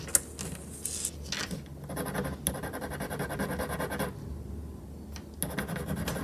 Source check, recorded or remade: recorded